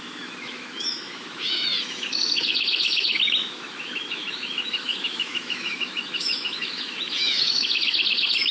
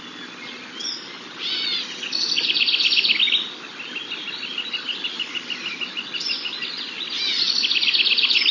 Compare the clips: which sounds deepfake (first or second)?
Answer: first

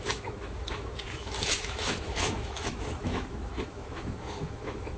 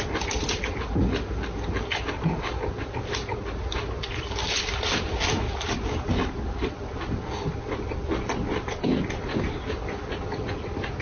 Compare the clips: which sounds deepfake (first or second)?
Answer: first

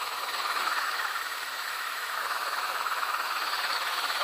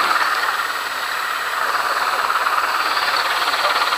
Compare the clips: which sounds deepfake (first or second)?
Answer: first